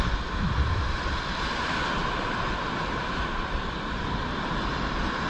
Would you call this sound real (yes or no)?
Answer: no